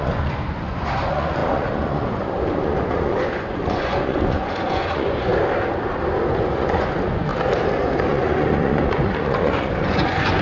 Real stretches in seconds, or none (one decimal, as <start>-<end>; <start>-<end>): 5.3-6.3; 7.3-8.1